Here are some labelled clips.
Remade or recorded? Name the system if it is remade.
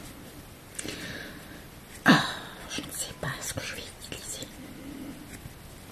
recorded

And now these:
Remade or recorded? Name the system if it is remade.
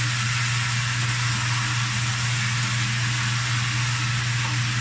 recorded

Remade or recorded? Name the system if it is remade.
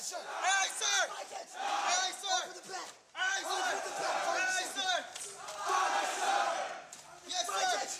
recorded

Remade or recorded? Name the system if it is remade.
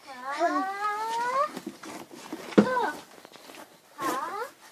recorded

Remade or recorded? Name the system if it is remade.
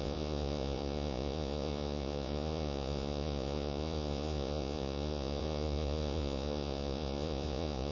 remade, vocoder, Vocos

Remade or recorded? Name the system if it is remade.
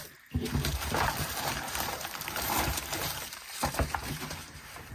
remade, vocoder, BigVGAN v2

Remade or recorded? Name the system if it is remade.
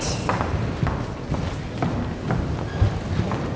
recorded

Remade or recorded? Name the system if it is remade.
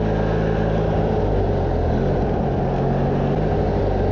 recorded